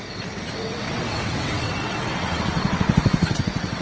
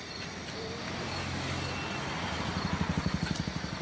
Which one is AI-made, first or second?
first